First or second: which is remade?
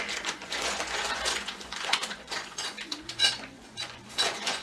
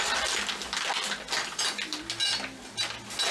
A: first